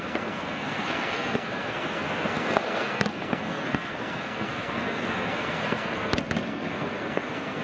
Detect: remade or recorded remade